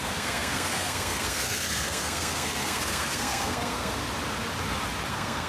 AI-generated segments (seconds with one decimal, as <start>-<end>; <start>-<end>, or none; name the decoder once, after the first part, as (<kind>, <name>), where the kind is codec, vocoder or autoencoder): 0.0-4.0 (codec, SNAC); 5.1-5.5